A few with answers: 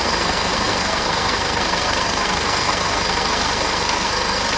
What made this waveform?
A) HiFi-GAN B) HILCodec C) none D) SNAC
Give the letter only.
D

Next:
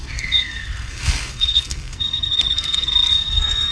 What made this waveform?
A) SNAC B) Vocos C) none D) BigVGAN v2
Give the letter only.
A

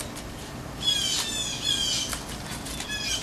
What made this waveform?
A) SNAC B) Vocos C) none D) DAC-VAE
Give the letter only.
C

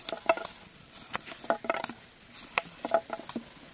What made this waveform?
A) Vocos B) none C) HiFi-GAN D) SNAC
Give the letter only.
B